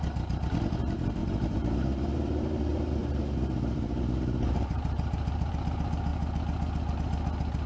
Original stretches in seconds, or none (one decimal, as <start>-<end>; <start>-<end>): 0.0-1.2; 2.4-3.0; 5.5-7.7